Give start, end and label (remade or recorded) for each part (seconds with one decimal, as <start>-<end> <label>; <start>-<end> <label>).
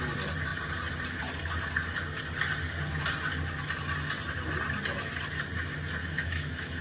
0.0-6.0 recorded; 6.0-6.8 remade